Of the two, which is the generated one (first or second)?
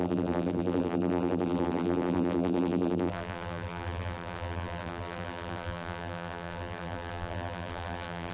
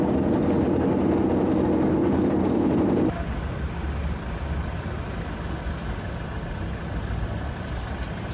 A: first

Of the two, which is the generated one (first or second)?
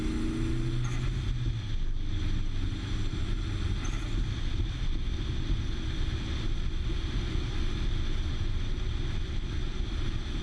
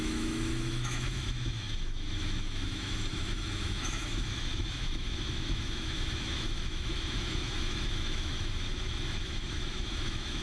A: second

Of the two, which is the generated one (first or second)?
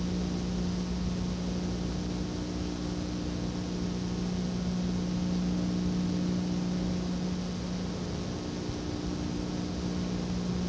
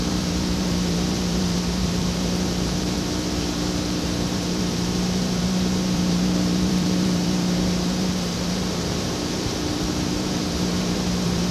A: second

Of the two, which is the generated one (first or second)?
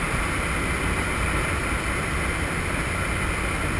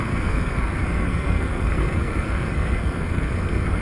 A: second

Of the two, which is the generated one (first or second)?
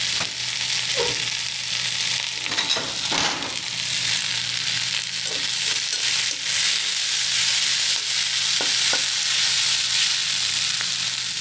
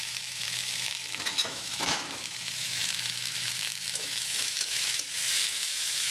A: second